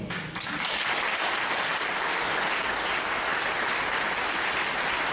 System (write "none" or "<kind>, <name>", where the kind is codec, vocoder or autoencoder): none